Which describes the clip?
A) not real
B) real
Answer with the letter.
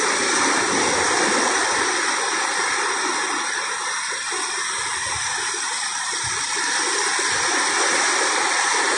B